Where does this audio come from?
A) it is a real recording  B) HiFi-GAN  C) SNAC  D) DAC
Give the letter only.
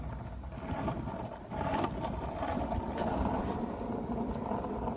A